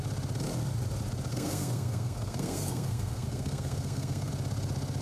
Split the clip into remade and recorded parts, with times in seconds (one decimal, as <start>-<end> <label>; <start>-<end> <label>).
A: 0.0-1.3 recorded; 1.3-4.3 remade; 4.3-5.0 recorded